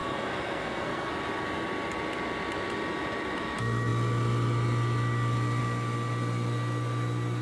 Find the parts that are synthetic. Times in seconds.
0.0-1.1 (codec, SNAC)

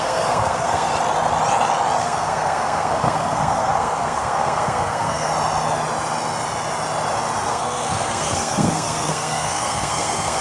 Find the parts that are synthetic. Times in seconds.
0.0-0.9 (codec, SNAC); 2.0-5.3; 7.5-10.4

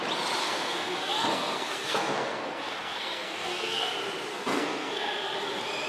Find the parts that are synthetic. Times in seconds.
0.4-3.9 (codec, SNAC); 4.3-5.4